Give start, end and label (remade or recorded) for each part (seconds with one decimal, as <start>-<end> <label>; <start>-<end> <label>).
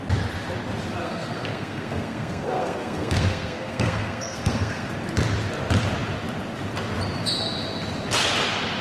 0.0-1.0 recorded; 1.0-4.9 remade; 4.9-8.8 recorded